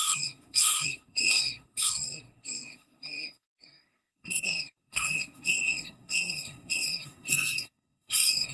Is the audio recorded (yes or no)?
no